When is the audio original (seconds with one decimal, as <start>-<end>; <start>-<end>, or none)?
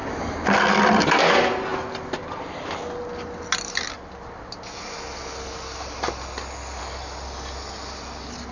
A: 0.0-8.5